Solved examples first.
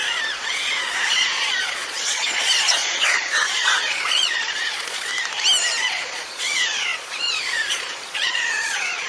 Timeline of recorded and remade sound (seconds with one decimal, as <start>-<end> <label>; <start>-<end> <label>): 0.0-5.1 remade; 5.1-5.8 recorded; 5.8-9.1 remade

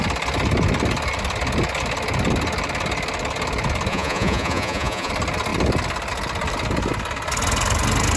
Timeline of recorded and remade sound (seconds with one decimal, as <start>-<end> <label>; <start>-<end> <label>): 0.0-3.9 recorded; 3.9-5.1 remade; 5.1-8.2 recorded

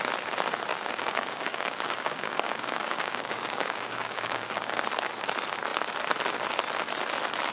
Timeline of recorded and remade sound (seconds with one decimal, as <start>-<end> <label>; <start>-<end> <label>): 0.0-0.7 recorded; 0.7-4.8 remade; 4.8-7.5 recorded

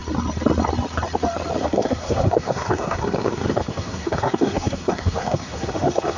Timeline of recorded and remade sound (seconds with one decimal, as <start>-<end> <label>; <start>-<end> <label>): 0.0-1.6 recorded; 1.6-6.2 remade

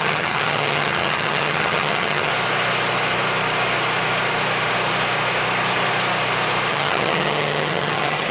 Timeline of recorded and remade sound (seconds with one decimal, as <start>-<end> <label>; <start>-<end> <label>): 0.0-2.3 remade; 2.3-6.7 recorded; 6.7-8.3 remade

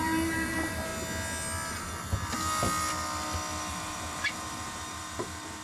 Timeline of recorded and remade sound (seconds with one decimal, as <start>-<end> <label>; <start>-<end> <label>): 0.0-0.9 remade; 0.9-3.7 recorded; 3.7-5.6 remade

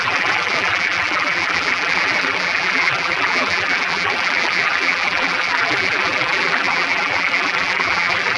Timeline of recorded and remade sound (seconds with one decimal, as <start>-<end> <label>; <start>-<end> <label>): 0.0-8.4 remade

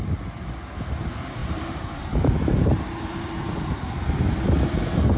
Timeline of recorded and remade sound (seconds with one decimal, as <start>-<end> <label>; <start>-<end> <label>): 0.0-1.4 recorded; 1.4-3.8 remade; 3.8-5.2 recorded